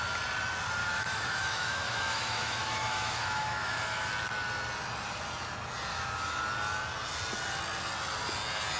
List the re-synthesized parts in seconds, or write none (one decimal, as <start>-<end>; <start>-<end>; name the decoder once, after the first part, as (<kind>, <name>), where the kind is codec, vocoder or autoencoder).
0.8-4.1 (autoencoder, DAC-VAE); 5.9-6.4

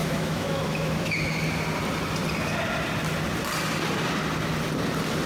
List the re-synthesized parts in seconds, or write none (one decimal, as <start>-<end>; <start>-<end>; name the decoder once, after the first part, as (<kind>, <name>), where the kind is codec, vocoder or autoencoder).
0.0-1.2 (autoencoder, DAC-VAE)

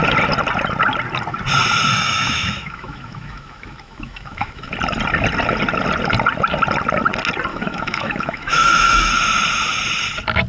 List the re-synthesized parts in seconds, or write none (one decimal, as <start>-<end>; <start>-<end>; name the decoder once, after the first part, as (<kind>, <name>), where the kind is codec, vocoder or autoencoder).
1.9-4.7 (autoencoder, DAC-VAE); 7.5-9.1

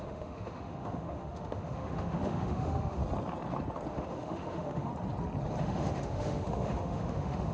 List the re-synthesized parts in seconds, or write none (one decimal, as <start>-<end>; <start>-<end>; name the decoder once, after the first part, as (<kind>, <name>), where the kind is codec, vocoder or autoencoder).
0.0-3.0 (autoencoder, DAC-VAE); 3.9-4.9; 5.6-7.5

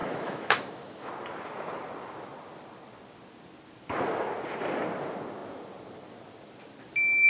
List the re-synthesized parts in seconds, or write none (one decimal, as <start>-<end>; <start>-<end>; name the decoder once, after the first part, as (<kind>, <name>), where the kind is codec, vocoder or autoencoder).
0.0-1.1 (autoencoder, DAC-VAE)